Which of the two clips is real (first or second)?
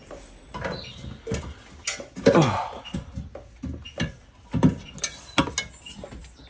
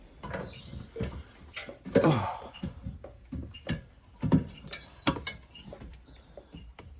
first